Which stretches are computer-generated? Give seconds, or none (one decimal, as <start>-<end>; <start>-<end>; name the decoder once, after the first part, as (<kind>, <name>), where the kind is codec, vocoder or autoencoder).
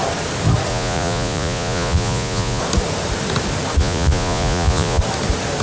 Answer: 0.7-2.6 (vocoder, Vocos); 3.8-5.0